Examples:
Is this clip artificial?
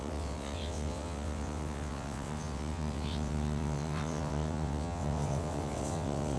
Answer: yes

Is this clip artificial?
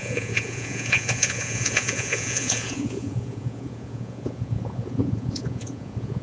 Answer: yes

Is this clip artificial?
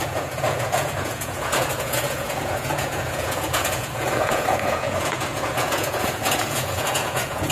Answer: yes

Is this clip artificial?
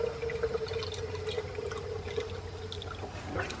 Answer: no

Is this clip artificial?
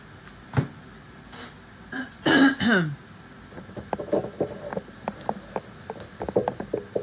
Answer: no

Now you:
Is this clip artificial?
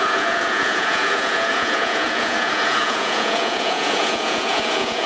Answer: yes